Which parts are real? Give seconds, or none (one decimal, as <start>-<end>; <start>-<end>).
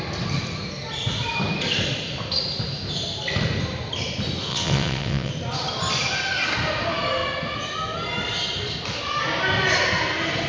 0.0-4.5; 5.3-10.5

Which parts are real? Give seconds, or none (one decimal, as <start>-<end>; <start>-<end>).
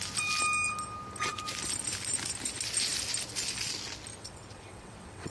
0.0-4.2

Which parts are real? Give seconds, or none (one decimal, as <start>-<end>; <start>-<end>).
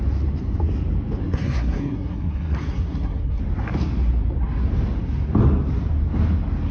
0.0-1.2; 3.4-6.7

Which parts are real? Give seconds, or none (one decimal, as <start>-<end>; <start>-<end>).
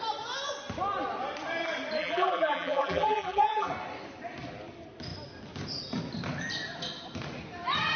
0.0-2.0; 3.7-8.0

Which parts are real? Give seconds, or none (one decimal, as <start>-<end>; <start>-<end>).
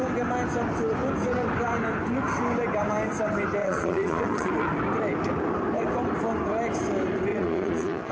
0.0-3.6; 4.5-7.3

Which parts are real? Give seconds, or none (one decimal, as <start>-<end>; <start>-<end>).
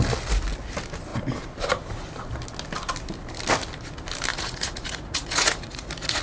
0.0-4.3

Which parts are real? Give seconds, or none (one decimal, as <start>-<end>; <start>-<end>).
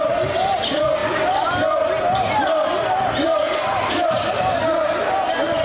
0.0-5.6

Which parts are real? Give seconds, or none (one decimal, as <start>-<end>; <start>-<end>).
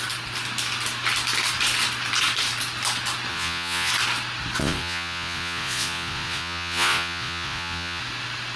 0.0-3.3; 3.9-4.6; 8.0-8.6